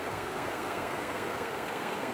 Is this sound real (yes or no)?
no